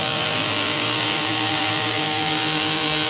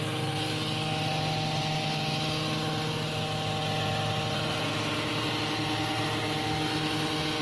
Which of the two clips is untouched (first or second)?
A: second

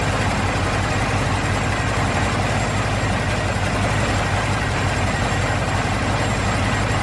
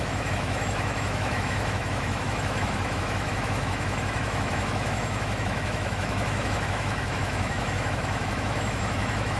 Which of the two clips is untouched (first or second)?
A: first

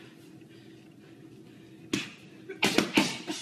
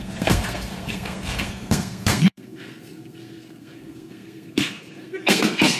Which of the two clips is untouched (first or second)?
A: first